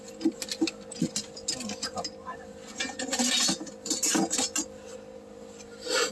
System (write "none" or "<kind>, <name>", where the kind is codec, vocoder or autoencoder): none